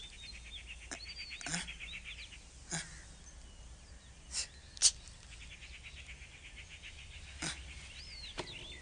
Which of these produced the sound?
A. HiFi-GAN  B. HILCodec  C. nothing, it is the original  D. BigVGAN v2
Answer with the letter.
C